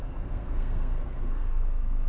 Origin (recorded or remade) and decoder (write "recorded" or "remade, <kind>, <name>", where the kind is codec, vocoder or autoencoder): remade, codec, SNAC